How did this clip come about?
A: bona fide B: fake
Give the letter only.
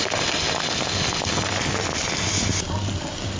A